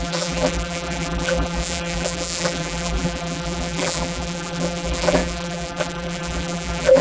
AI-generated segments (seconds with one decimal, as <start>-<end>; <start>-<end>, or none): 0.0-7.0